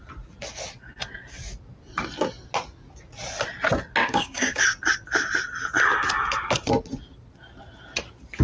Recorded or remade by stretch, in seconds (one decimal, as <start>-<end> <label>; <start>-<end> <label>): 0.0-4.0 recorded; 4.0-4.6 remade; 4.6-8.4 recorded